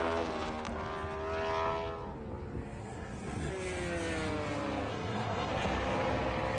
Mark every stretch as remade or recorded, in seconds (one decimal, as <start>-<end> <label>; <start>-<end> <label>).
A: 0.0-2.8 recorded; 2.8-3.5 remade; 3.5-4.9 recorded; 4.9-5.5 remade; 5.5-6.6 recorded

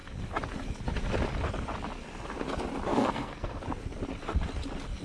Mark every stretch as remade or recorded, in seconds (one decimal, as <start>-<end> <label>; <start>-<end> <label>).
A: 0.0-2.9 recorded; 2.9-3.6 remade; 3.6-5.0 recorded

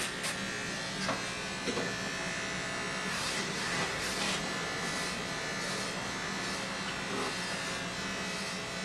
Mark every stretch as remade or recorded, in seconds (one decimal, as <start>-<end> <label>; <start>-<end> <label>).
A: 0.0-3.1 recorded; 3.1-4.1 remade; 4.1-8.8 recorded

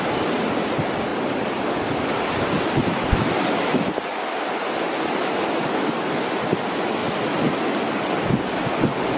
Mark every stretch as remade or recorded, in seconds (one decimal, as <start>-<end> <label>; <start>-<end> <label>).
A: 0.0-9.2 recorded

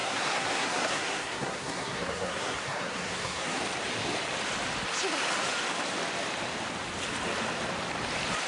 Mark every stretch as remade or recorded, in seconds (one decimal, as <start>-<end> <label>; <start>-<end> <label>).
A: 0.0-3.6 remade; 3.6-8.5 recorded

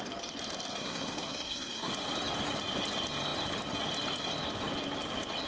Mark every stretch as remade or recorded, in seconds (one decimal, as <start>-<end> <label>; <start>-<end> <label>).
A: 0.0-0.8 recorded; 0.8-1.9 remade; 1.9-5.5 recorded

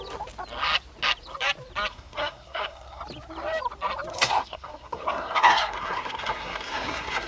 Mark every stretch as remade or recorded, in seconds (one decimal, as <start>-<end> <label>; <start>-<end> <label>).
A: 0.0-1.9 recorded; 1.9-3.0 remade; 3.0-4.1 recorded; 4.1-7.3 remade